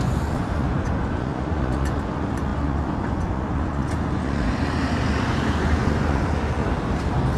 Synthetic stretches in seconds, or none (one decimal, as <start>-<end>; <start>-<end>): 0.0-6.6